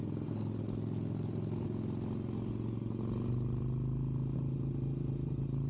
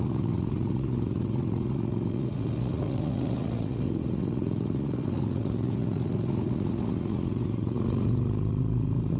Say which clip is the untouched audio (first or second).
first